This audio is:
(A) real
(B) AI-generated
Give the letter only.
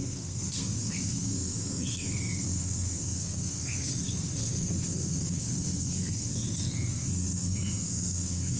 B